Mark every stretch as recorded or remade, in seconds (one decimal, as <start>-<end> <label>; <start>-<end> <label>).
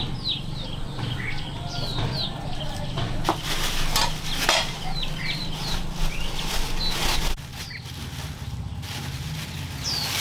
0.0-10.2 recorded